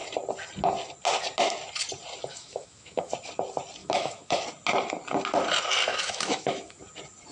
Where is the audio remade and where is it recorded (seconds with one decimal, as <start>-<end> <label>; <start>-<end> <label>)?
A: 0.0-2.3 recorded; 2.3-3.1 remade; 3.1-3.8 recorded; 3.8-4.4 remade; 4.4-5.9 recorded; 5.9-6.8 remade; 6.8-7.3 recorded